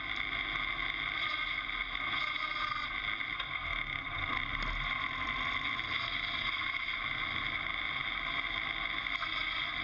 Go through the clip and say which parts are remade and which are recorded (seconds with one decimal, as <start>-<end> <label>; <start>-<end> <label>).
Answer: 0.0-9.8 recorded